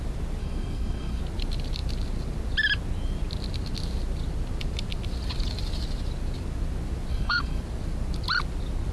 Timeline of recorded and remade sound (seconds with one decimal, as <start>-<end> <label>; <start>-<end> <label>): 0.0-0.4 recorded; 0.4-1.2 remade; 1.2-7.1 recorded; 7.1-7.6 remade; 7.6-8.9 recorded